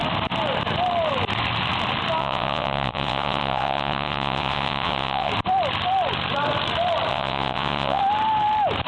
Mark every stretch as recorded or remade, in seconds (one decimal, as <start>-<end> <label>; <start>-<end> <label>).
0.0-2.2 recorded; 2.2-5.3 remade; 5.3-7.1 recorded; 7.1-8.0 remade; 8.0-8.9 recorded